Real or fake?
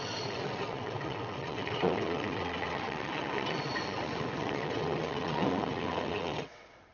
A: fake